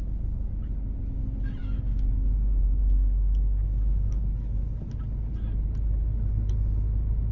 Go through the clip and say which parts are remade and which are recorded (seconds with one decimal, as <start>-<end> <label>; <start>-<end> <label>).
0.0-1.6 recorded; 1.6-4.2 remade; 4.2-7.3 recorded